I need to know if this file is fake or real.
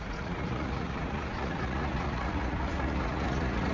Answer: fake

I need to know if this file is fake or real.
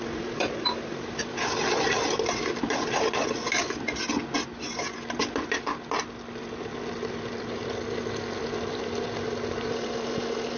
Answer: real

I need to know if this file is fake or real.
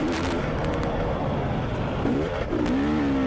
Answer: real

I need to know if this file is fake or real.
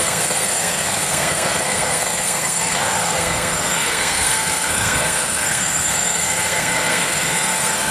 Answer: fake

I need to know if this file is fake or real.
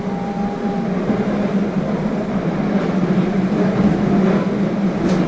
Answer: real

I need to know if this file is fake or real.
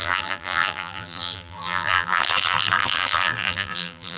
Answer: fake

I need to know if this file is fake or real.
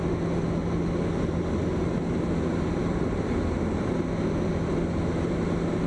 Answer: real